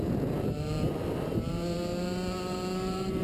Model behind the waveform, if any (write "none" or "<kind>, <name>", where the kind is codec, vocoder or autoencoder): vocoder, BigVGAN v2